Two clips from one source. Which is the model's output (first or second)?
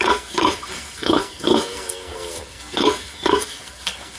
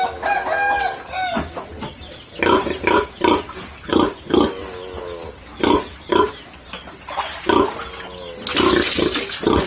first